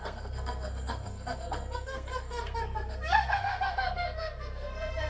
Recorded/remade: remade